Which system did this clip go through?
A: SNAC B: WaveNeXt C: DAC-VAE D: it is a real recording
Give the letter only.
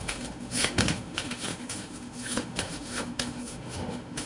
C